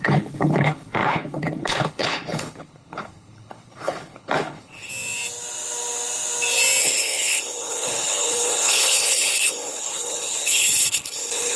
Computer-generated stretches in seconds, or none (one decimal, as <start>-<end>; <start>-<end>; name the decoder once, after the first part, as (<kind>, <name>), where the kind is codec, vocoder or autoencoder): 0.0-4.9 (codec, HILCodec); 6.8-11.6